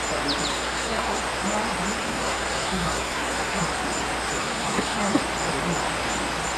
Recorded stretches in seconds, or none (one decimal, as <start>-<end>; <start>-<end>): 0.0-0.5; 1.2-2.0; 3.6-4.4; 5.2-6.6